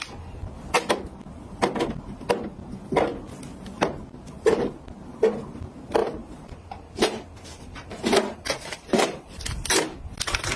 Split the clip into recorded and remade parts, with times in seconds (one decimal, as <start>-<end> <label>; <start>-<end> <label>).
0.0-3.5 recorded; 3.5-4.0 remade; 4.0-6.0 recorded; 6.0-9.4 remade; 9.4-10.6 recorded